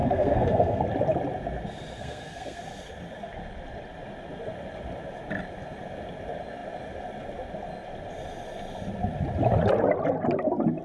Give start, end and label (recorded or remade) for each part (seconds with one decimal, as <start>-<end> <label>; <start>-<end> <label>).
0.0-0.8 remade; 0.8-2.0 recorded; 2.0-2.6 remade; 2.6-10.8 recorded